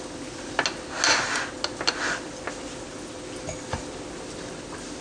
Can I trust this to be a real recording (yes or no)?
yes